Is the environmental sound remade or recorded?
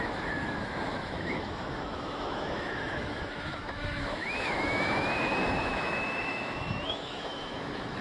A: remade